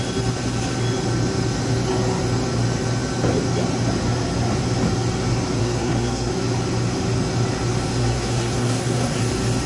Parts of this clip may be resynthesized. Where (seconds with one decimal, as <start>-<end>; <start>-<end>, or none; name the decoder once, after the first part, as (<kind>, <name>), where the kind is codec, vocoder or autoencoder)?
5.6-6.3 (codec, SNAC); 8.0-9.2